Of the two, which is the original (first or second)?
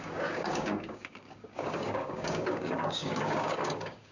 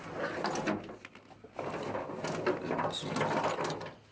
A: second